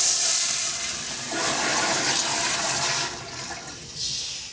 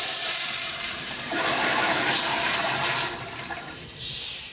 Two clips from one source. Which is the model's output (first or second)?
second